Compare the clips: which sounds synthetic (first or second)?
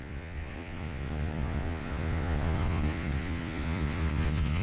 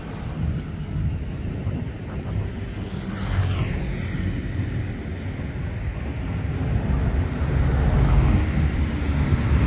first